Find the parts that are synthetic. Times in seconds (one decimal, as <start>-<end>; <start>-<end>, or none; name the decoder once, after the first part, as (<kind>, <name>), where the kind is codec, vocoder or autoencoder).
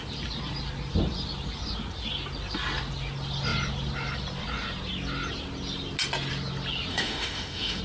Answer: 6.9-7.8 (autoencoder, DAC-VAE)